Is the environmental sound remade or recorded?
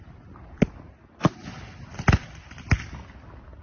recorded